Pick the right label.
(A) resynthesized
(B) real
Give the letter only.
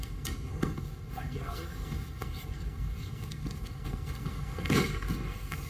A